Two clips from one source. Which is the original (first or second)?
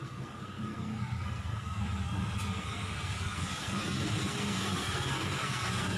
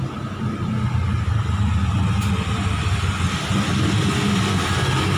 second